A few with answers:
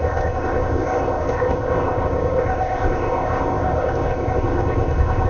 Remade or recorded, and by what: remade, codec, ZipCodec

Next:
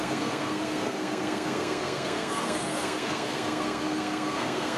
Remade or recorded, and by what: remade, codec, SNAC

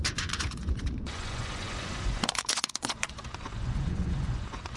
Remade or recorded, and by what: remade, vocoder, Vocos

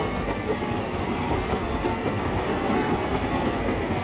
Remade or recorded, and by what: remade, codec, SNAC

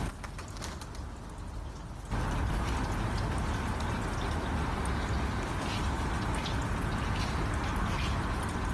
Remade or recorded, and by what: recorded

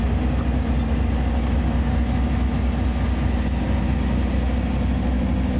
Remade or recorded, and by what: recorded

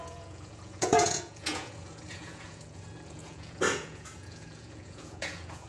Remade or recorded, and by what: remade, vocoder, Vocos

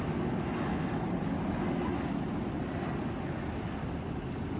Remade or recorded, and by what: recorded